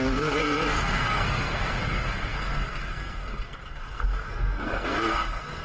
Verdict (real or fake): fake